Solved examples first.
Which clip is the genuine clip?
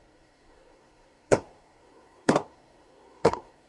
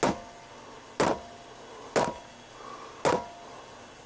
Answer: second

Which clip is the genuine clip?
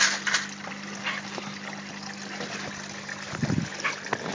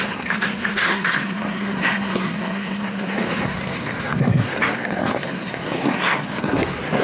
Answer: first